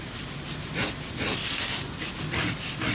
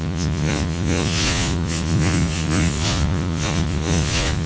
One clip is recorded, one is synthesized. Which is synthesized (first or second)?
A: second